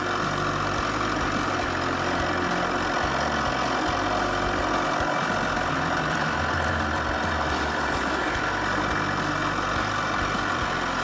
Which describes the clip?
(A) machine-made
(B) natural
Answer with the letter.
B